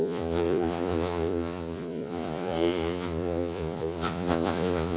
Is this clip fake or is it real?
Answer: fake